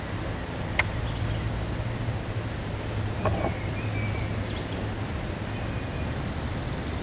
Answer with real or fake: real